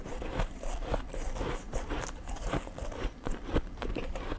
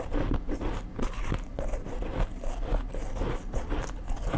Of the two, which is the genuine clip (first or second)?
second